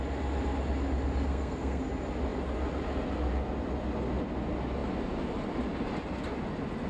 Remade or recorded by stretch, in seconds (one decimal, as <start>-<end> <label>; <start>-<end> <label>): 0.0-1.3 recorded; 1.3-1.8 remade; 1.8-6.9 recorded